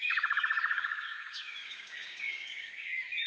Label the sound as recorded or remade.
remade